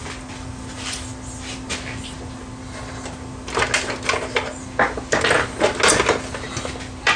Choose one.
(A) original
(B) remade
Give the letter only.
A